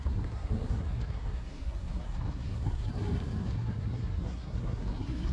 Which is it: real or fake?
fake